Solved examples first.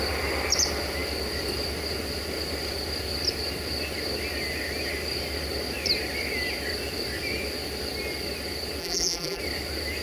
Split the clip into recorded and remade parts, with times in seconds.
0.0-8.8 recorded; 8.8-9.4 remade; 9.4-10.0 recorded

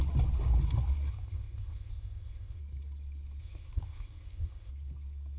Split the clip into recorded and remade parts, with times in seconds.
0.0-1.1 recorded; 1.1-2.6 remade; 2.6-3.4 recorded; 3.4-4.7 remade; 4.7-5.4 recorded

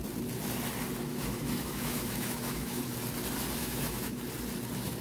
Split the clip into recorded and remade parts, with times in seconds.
0.0-1.1 recorded; 1.1-2.8 remade; 2.8-3.6 recorded; 3.6-4.2 remade; 4.2-5.0 recorded